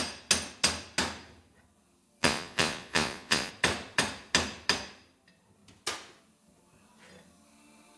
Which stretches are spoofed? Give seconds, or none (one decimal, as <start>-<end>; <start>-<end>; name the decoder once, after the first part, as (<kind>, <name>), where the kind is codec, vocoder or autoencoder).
2.2-3.5 (vocoder, Vocos)